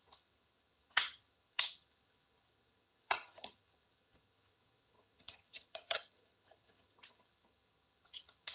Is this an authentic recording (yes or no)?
no